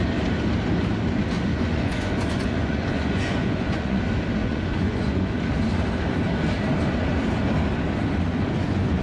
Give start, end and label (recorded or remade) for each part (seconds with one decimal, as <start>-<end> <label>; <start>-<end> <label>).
0.0-1.5 recorded; 1.5-4.0 remade; 4.0-4.4 recorded; 4.4-5.3 remade; 5.3-8.3 recorded; 8.3-9.0 remade